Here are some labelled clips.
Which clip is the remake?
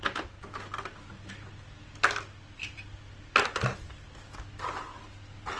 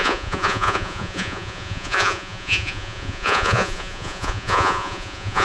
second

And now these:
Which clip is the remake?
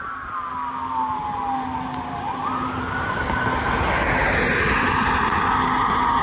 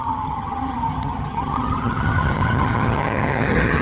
second